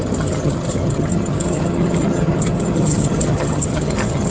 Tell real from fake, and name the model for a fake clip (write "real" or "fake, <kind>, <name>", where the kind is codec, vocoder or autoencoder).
fake, vocoder, HiFi-GAN